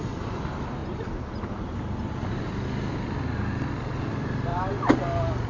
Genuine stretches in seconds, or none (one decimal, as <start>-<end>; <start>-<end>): 0.8-4.1; 4.5-5.5